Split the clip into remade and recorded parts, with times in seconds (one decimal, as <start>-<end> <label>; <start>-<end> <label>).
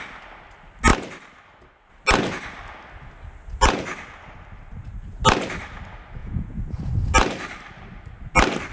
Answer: 0.0-6.2 recorded; 6.2-6.7 remade; 6.7-8.7 recorded